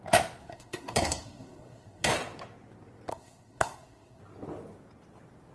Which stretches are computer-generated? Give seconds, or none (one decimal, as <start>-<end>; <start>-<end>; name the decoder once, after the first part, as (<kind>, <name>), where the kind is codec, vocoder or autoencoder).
0.4-2.1 (codec, SNAC); 3.1-4.2